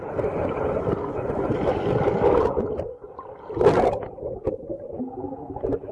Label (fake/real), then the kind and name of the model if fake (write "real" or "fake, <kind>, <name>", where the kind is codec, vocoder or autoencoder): real